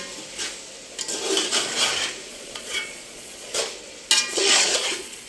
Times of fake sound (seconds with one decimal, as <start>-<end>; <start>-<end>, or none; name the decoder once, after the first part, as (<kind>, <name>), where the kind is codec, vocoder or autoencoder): 2.3-3.6 (vocoder, Vocos); 4.3-5.3